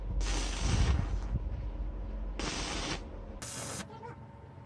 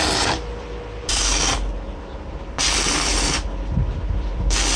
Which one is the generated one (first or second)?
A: second